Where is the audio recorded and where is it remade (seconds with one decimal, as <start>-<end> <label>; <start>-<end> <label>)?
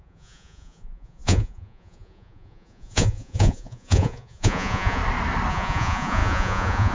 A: 0.0-5.0 remade; 5.0-5.5 recorded; 5.5-6.9 remade